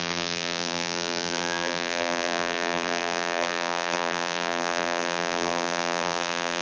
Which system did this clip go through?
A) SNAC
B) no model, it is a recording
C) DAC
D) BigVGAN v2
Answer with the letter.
D